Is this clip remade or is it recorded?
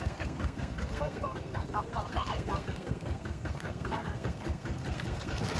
remade